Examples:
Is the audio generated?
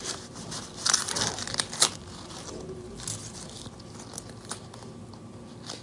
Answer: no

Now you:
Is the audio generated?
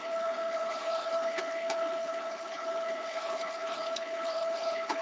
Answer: yes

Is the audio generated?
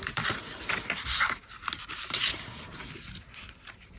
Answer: no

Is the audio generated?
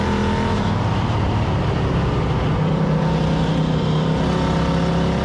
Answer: no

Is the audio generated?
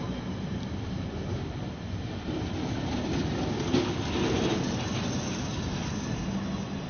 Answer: no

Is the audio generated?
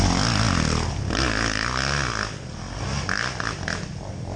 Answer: no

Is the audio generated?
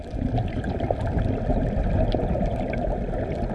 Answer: no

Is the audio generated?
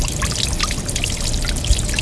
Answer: no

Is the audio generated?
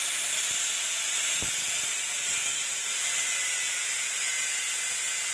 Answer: no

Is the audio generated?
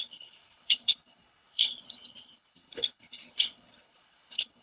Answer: yes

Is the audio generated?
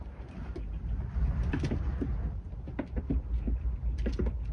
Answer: no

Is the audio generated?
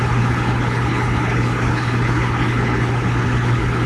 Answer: yes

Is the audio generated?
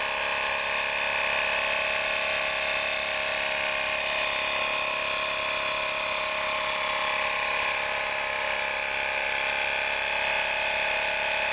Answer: no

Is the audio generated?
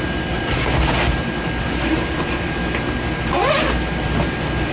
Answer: no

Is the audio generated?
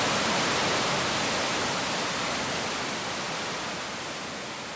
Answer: no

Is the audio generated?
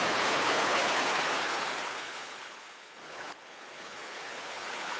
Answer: yes